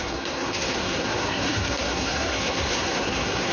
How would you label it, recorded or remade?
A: remade